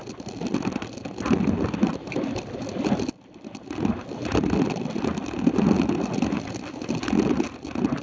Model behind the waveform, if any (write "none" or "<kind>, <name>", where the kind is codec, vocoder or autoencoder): none